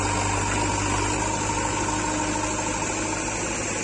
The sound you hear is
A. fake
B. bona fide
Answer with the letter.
B